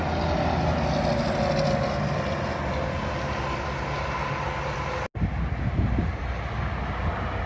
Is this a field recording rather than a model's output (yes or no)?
yes